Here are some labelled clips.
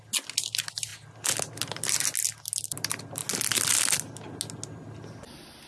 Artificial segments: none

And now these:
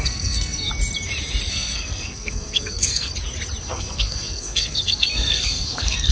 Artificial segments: 0.0-0.7 (codec, SNAC); 1.5-3.1; 3.6-6.1

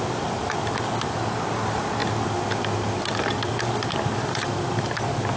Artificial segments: none

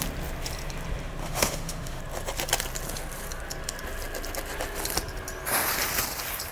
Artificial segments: 1.2-2.0 (autoencoder, DAC-VAE)

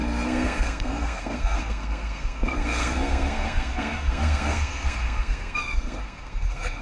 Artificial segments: 0.0-6.8 (codec, SNAC)

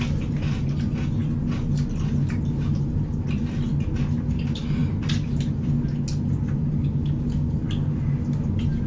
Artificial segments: none

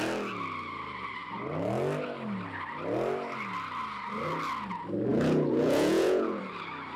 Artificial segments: 5.1-6.4 (vocoder, Vocos)

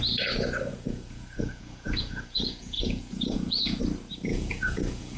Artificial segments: 0.7-3.8 (vocoder, Vocos); 4.3-5.2